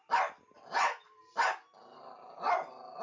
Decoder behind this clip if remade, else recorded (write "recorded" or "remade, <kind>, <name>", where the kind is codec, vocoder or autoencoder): recorded